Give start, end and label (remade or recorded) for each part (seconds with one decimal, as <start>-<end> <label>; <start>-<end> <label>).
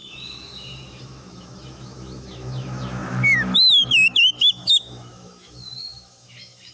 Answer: 0.0-6.7 remade